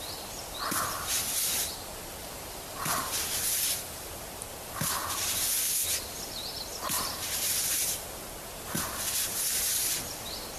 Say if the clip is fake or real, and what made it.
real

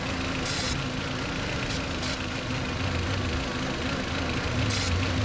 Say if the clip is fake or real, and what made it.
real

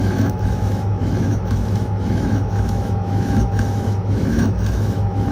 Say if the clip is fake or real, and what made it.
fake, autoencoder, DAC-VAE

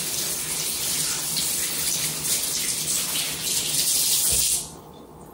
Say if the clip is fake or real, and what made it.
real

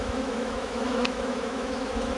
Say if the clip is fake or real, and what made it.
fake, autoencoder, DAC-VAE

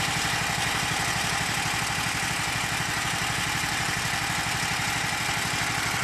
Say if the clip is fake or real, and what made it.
real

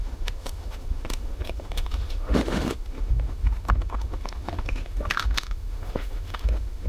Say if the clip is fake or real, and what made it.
fake, autoencoder, DAC-VAE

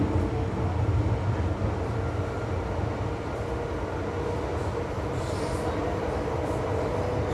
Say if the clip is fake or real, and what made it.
real